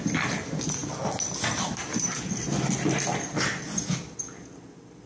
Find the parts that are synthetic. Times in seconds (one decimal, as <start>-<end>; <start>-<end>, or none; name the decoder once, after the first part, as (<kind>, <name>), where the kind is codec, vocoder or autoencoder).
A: none